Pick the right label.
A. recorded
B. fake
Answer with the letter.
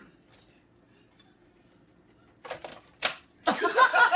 B